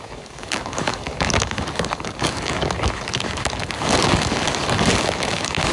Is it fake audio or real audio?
fake